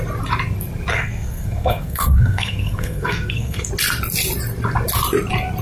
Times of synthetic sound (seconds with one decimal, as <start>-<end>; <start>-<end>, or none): 0.9-3.7